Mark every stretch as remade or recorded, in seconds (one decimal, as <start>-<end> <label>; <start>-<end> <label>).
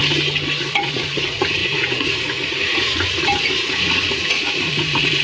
0.0-0.6 recorded; 0.6-5.2 remade